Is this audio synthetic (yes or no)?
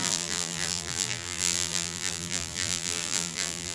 yes